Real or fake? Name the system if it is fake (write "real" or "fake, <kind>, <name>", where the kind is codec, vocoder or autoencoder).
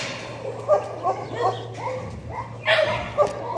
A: real